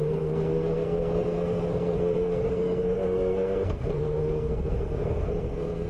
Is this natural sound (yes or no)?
no